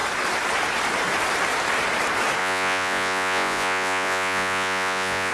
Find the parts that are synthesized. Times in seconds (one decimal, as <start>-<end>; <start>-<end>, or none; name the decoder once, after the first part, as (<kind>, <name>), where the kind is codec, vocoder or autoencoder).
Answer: 2.4-5.3 (vocoder, Vocos)